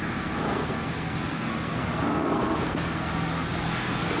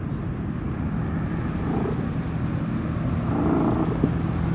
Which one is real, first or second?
second